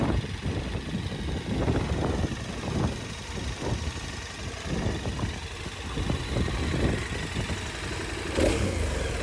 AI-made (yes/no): no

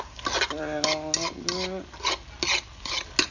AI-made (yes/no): no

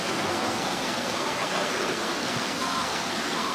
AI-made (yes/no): yes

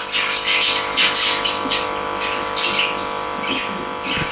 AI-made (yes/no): no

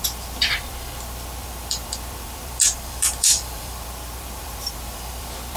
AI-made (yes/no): yes